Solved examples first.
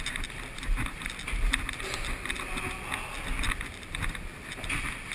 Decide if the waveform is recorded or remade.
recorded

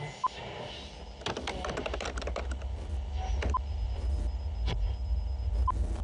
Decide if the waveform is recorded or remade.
recorded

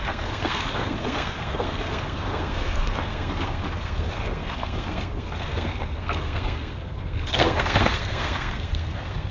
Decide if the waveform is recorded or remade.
remade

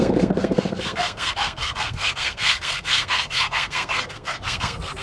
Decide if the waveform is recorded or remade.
remade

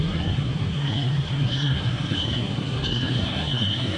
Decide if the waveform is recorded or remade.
remade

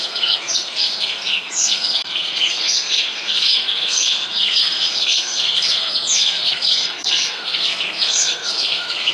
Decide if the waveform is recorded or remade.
remade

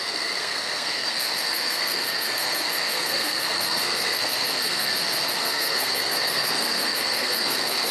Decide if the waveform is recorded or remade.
remade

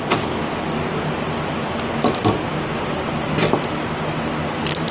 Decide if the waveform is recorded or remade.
recorded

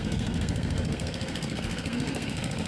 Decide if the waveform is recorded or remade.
remade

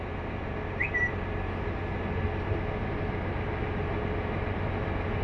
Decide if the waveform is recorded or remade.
recorded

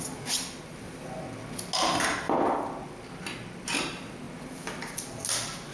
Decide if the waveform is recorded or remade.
recorded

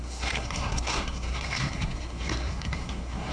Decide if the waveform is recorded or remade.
remade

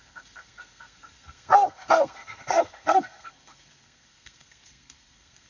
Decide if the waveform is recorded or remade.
remade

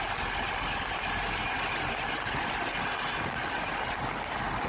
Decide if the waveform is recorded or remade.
recorded